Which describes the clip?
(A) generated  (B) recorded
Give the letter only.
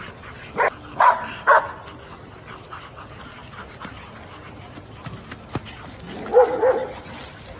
B